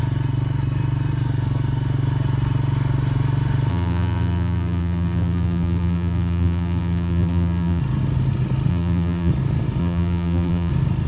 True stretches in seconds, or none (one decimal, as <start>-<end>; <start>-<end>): 0.0-3.7; 7.8-8.7; 9.3-9.8; 10.7-11.1